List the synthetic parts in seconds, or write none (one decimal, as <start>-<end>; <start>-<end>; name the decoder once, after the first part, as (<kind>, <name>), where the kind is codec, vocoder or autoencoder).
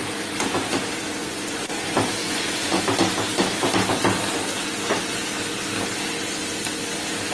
1.2-1.7 (vocoder, Vocos); 2.2-2.8